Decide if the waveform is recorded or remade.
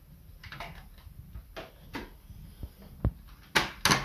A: recorded